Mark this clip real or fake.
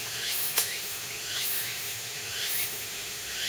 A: fake